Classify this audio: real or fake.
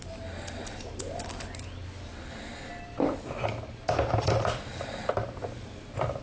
real